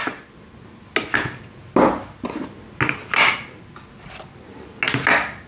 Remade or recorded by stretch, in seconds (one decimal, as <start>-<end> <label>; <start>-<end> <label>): 0.0-5.5 recorded